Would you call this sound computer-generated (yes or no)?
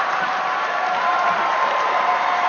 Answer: yes